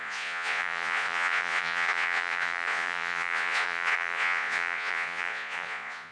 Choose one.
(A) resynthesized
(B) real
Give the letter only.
A